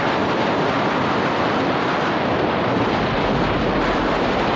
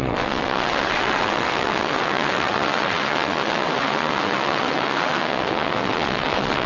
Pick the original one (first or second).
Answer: first